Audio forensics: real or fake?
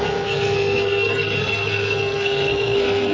fake